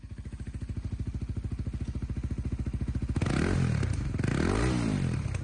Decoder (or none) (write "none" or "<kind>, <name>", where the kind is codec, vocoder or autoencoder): none